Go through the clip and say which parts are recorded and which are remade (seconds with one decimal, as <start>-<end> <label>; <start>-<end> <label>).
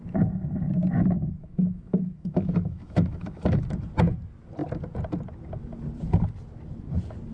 0.0-1.4 recorded; 1.4-3.6 remade; 3.6-7.3 recorded